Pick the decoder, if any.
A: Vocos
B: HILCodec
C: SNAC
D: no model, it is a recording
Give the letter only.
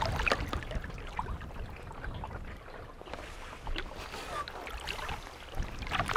D